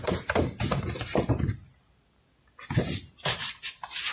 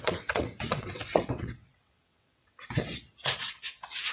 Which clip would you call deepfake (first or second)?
second